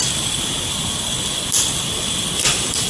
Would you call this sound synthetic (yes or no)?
no